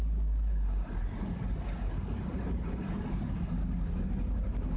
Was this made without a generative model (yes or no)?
yes